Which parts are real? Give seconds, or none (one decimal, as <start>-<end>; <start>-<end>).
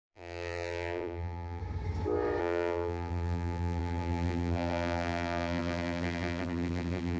1.6-2.4